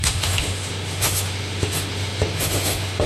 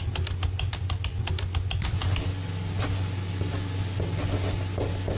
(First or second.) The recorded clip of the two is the second